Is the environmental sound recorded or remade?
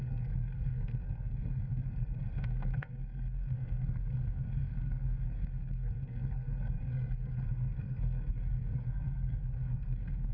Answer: remade